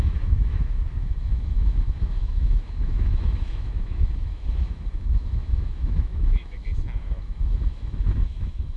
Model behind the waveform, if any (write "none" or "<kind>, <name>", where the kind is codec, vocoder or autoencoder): autoencoder, DAC-VAE